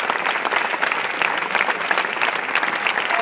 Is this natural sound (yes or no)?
yes